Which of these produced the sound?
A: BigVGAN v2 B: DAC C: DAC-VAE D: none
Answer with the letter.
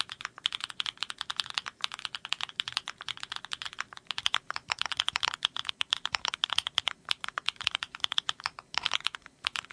A